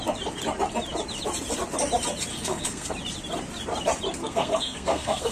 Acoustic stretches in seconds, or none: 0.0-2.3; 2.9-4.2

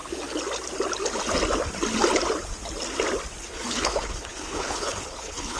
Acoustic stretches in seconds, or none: 0.0-3.4